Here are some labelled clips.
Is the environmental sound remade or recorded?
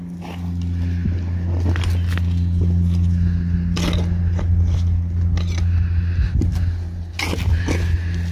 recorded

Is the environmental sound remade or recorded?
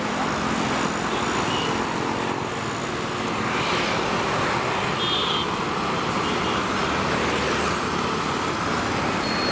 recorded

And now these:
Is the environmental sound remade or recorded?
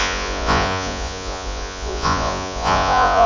remade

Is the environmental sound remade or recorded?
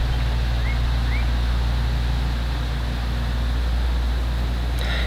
recorded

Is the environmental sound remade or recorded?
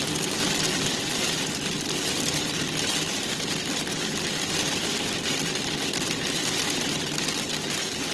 recorded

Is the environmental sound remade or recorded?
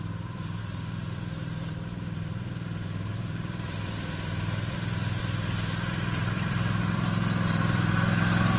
remade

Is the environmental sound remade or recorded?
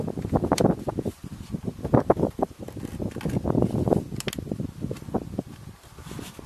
recorded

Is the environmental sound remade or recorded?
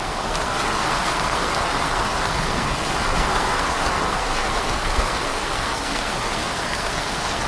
remade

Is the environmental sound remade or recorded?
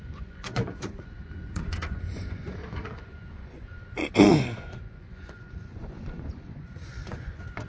remade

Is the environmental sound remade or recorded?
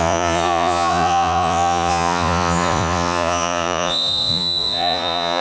remade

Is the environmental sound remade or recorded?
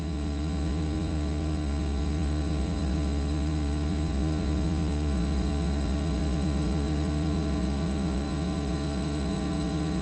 remade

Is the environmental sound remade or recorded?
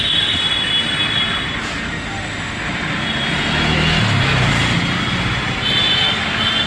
recorded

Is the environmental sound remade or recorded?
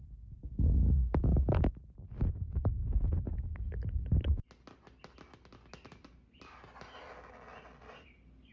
recorded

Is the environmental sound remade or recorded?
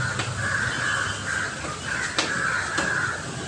recorded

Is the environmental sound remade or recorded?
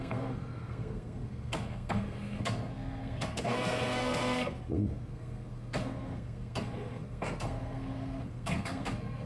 remade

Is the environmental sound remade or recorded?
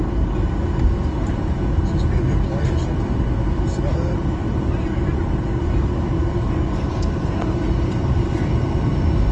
recorded